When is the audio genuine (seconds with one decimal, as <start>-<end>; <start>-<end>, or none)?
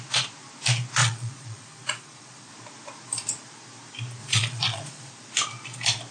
0.0-1.0; 2.5-4.2; 5.1-6.1